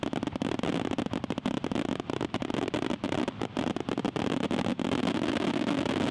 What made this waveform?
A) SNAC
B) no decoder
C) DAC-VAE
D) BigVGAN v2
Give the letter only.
B